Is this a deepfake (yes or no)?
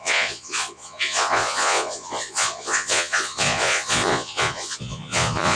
yes